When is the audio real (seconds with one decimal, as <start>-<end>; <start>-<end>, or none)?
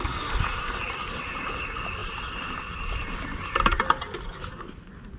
0.0-5.2